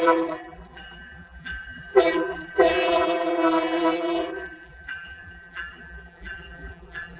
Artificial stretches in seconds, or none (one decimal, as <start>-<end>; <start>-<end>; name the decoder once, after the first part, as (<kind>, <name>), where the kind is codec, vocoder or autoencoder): 0.0-7.2 (vocoder, BigVGAN v2)